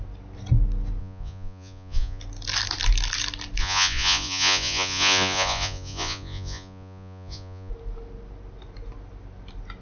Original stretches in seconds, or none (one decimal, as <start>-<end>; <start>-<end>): 0.0-1.0; 2.2-3.6; 7.7-9.8